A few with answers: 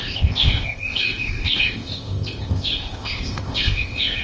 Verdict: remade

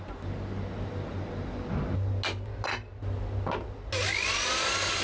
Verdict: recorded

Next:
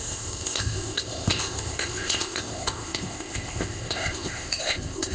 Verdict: remade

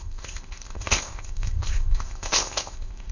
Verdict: remade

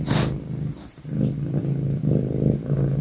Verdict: recorded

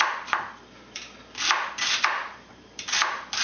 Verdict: recorded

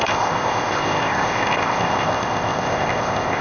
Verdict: remade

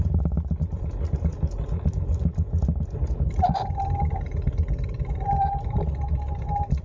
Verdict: recorded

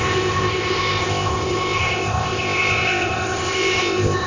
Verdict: remade